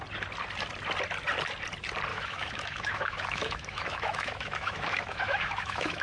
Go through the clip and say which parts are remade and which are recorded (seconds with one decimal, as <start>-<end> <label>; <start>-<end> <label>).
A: 0.0-2.1 recorded; 2.1-6.0 remade